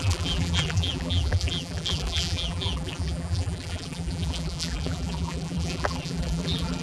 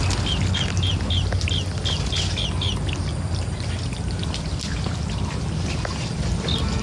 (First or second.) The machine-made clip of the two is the first